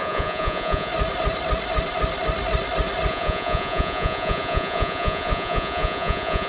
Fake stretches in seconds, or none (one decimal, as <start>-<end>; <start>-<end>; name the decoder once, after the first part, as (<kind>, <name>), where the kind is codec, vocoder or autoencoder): 0.0-0.9 (vocoder, Vocos); 3.1-6.5